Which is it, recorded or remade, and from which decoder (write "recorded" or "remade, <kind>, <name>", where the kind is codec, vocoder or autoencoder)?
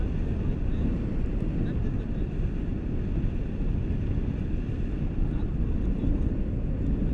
recorded